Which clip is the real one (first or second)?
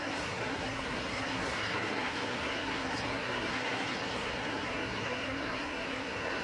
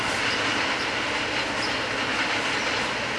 second